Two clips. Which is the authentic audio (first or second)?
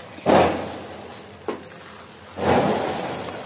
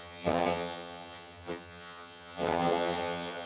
first